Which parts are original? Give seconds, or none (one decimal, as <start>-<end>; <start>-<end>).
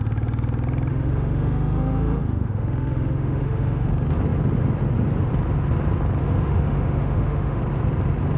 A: 0.0-0.9; 3.9-6.2; 7.6-8.4